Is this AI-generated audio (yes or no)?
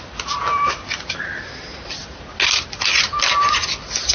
no